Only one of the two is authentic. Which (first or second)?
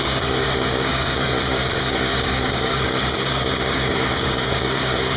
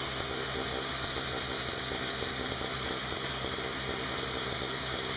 second